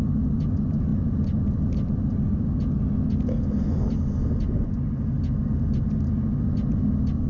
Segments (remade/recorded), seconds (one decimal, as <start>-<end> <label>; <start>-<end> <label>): 0.0-7.3 recorded